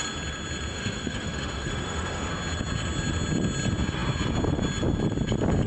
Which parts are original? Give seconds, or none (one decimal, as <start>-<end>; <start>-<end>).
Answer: 0.0-0.7; 2.3-5.7